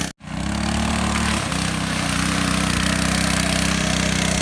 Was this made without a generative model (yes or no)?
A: yes